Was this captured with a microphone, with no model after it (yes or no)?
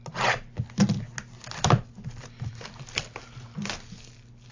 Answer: yes